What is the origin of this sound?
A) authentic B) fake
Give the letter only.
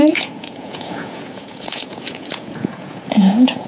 B